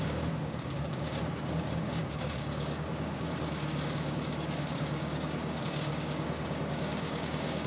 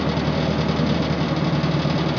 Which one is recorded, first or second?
second